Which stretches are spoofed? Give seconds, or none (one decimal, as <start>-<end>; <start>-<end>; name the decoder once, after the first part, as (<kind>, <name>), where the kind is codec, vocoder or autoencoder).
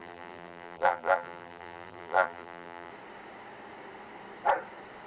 0.0-2.9 (vocoder, BigVGAN v2)